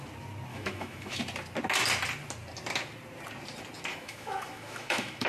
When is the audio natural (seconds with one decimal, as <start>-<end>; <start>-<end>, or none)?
0.0-0.5; 1.2-3.9